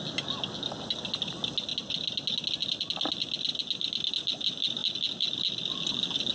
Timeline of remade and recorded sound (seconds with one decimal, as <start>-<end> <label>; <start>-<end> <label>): 0.0-6.3 recorded